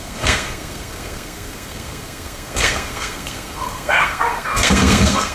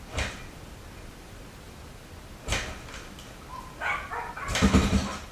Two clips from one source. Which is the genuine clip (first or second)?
second